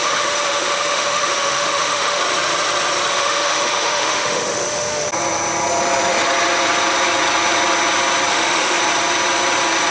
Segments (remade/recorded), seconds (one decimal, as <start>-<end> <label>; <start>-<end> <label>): 0.0-2.2 remade; 2.2-3.1 recorded; 3.1-5.1 remade; 5.1-8.3 recorded; 8.3-8.8 remade; 8.8-9.9 recorded

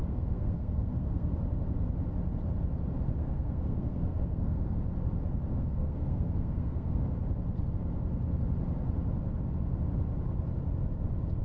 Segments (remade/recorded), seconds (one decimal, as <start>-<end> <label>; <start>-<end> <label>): 0.0-1.3 remade; 1.3-3.2 recorded; 3.2-4.8 remade; 4.8-5.5 recorded; 5.5-7.0 remade; 7.0-11.4 recorded

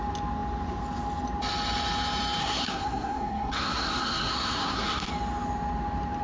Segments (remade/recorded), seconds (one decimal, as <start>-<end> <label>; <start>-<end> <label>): 0.0-2.4 recorded; 2.4-5.1 remade; 5.1-6.2 recorded

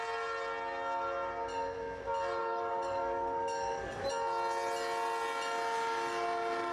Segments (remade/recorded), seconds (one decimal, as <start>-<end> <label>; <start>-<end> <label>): 0.0-2.4 recorded; 2.4-4.0 remade; 4.0-6.7 recorded

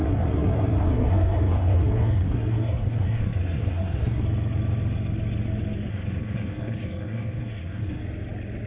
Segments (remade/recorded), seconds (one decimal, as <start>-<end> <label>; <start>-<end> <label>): 0.0-4.2 remade; 4.2-5.9 recorded; 5.9-8.0 remade; 8.0-8.7 recorded

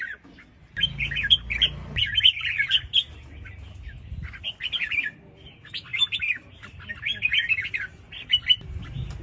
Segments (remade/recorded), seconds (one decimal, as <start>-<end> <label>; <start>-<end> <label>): 0.0-9.2 recorded